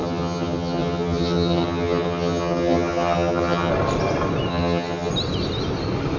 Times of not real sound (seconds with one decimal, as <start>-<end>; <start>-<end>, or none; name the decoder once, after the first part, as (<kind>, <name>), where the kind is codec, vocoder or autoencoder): 0.0-3.7 (vocoder, HiFi-GAN); 4.5-5.1